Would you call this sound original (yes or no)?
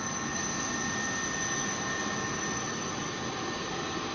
yes